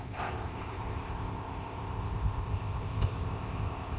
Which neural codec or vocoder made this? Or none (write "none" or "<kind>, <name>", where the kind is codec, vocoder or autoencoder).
codec, ZipCodec